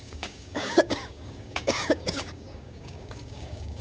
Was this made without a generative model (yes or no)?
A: no